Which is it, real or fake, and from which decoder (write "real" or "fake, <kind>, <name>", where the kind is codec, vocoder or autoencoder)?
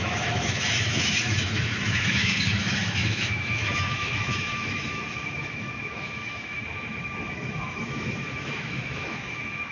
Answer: fake, autoencoder, DAC-VAE